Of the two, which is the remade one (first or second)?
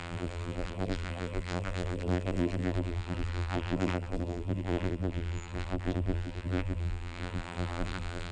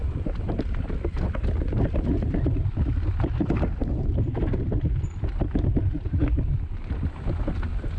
first